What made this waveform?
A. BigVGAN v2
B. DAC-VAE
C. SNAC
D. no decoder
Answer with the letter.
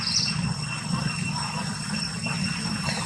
D